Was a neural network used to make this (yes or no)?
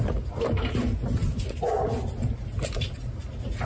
no